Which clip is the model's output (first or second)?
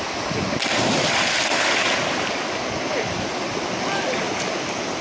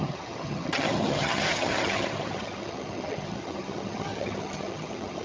second